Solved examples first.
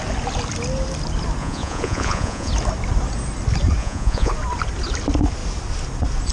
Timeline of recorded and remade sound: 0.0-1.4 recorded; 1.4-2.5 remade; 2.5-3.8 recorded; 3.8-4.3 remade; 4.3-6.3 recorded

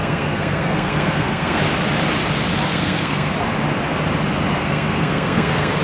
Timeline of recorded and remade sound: 0.0-1.6 remade; 1.6-2.7 recorded; 2.7-3.3 remade; 3.3-4.6 recorded; 4.6-5.8 remade

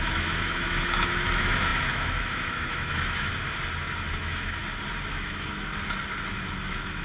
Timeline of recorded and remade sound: 0.0-3.3 remade; 3.3-4.1 recorded; 4.1-4.6 remade; 4.6-5.1 recorded; 5.1-5.7 remade; 5.7-6.6 recorded; 6.6-7.0 remade

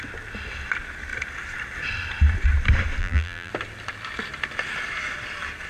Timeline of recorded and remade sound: 0.0-3.0 recorded; 3.0-3.5 remade; 3.5-5.7 recorded

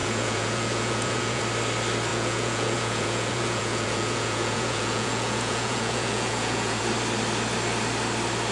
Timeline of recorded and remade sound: 0.0-1.4 remade; 1.4-2.1 recorded; 2.1-6.8 remade; 6.8-8.5 recorded